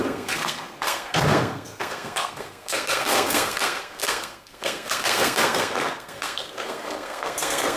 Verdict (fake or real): fake